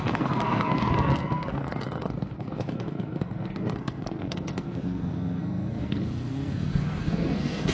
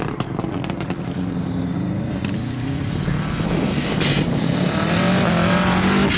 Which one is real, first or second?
second